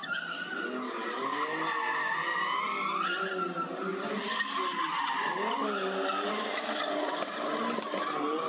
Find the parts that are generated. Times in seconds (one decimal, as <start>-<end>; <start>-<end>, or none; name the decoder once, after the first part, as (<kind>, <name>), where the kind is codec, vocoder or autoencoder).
0.0-0.6 (vocoder, BigVGAN v2)